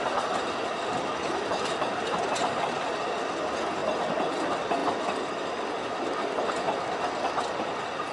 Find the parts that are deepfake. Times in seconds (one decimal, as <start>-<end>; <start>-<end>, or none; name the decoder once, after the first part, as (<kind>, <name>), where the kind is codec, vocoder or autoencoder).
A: none